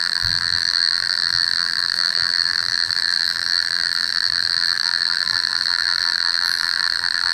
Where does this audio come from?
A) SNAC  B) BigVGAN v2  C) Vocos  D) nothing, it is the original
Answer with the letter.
B